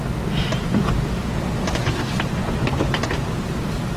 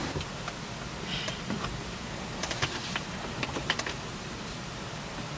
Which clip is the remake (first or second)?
second